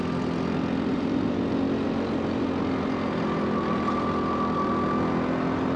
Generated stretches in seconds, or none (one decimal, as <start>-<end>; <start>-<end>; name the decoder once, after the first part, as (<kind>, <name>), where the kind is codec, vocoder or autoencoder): 0.9-1.6 (vocoder, BigVGAN v2)